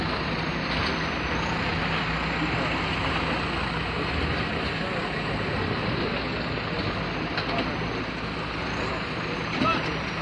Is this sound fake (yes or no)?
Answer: no